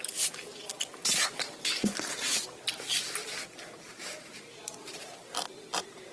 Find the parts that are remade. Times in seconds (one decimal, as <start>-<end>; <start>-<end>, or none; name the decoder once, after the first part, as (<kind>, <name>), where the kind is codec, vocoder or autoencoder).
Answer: none